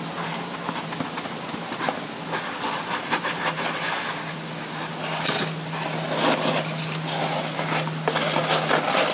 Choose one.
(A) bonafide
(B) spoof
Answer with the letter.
A